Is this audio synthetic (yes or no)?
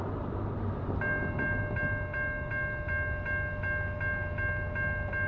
no